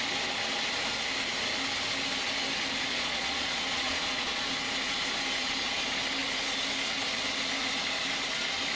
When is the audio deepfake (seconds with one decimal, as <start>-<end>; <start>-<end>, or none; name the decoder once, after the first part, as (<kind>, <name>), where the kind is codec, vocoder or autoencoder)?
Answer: 2.9-4.5 (vocoder, Vocos)